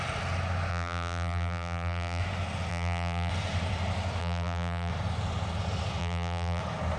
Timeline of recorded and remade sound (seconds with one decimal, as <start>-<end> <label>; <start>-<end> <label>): 0.0-0.7 recorded; 0.7-2.2 remade; 2.2-2.7 recorded; 2.7-3.3 remade; 3.3-4.2 recorded; 4.2-4.9 remade; 4.9-6.0 recorded; 6.0-6.6 remade; 6.6-7.0 recorded